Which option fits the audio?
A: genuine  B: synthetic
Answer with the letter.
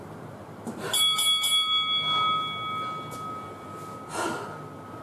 A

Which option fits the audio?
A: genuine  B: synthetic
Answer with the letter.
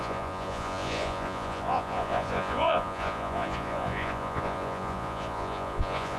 B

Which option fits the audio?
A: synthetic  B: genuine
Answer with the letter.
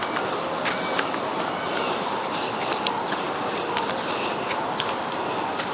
B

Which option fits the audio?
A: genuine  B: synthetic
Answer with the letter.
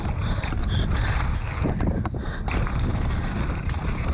A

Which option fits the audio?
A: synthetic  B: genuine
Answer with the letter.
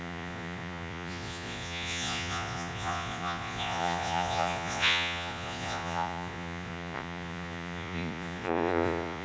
A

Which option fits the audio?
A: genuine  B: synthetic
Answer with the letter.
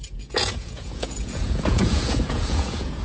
B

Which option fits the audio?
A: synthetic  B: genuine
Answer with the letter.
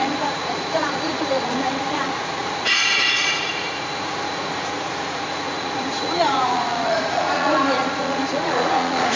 A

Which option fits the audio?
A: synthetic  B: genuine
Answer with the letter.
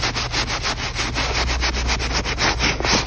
B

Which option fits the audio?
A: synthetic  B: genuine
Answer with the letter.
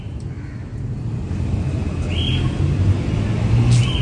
B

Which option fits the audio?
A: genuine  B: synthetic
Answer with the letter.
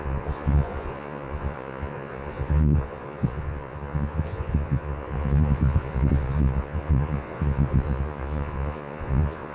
B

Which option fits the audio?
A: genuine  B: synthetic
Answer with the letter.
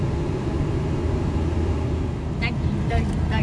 A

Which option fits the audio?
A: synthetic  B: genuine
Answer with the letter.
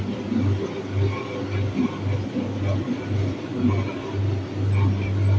B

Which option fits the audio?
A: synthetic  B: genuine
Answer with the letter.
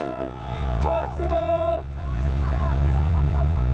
A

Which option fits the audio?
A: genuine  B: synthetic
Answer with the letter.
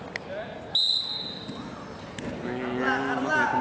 A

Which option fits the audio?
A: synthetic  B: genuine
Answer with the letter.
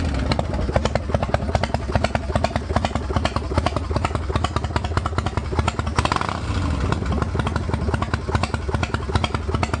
B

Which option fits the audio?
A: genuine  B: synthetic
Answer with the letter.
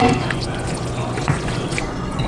B